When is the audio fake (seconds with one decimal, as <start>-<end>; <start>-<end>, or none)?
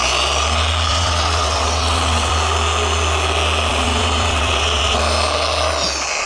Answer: 0.9-2.3; 3.7-5.0